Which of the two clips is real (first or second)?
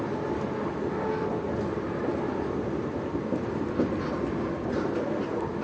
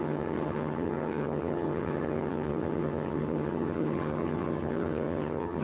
first